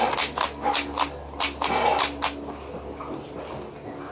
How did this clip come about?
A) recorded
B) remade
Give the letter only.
A